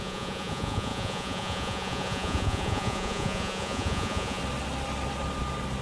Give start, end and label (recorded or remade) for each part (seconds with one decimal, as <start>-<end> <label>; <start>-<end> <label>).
0.0-4.4 remade; 4.4-5.8 recorded